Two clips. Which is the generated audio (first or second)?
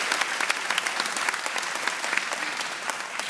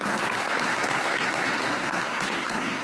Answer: second